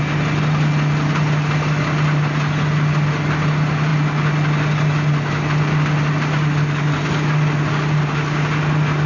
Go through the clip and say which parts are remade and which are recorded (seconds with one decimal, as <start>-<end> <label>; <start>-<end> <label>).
0.0-9.1 recorded